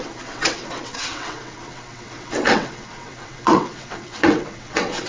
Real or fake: fake